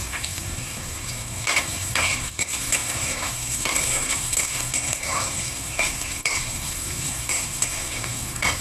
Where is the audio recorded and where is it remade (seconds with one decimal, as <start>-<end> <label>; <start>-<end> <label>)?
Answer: 0.0-8.6 remade